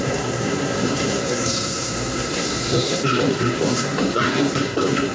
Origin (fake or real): fake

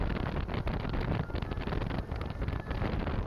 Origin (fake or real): real